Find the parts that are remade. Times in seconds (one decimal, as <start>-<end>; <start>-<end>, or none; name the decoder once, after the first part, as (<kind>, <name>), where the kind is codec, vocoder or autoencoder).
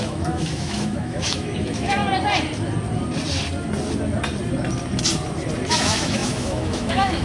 0.0-2.0 (autoencoder, DAC-VAE); 5.7-7.2